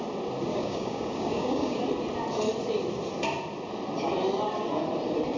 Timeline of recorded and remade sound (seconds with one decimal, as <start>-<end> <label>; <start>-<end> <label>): 0.0-0.5 recorded; 0.5-1.8 remade; 1.8-5.4 recorded